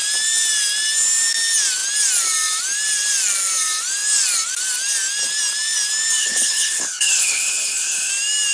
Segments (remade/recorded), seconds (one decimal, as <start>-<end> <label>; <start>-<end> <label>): 0.0-6.2 recorded; 6.2-8.1 remade; 8.1-8.5 recorded